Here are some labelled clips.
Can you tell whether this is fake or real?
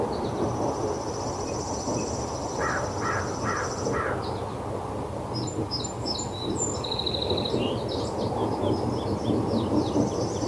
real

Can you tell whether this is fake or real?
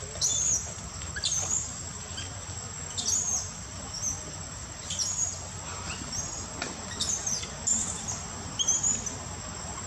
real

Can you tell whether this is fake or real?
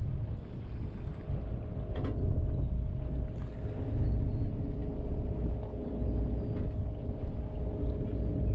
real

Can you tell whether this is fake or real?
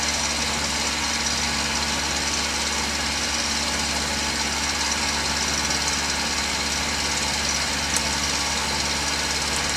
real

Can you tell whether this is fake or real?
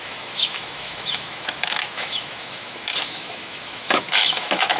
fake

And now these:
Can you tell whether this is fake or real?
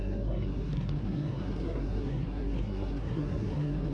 fake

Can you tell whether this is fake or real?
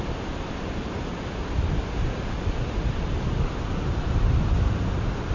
real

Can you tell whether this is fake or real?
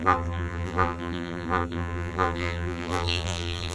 fake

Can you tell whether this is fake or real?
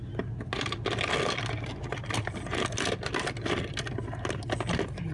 real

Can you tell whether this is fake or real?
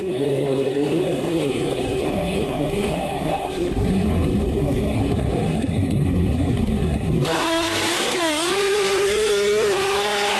fake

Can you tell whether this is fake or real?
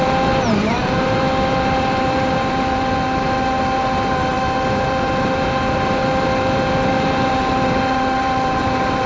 fake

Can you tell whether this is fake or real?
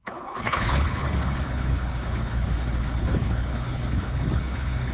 fake